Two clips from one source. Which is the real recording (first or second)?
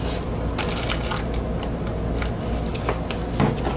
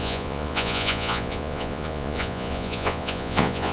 first